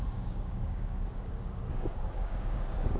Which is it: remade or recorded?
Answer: remade